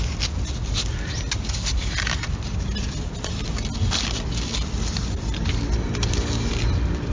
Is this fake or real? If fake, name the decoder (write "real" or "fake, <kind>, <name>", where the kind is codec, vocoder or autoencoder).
real